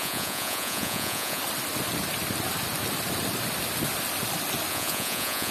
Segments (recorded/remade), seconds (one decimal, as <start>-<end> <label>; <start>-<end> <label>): 0.0-1.4 remade; 1.4-4.7 recorded; 4.7-5.5 remade